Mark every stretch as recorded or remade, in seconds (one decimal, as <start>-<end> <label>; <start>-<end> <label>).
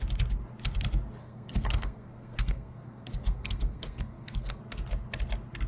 0.0-1.2 recorded; 1.2-4.6 remade; 4.6-5.7 recorded